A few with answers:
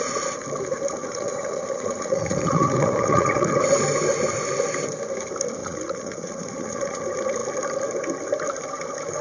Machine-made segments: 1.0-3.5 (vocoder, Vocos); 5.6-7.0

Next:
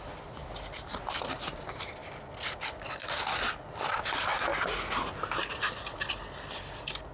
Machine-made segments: none

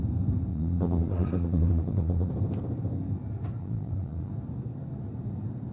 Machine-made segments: 0.5-2.3 (vocoder, Vocos); 3.6-4.3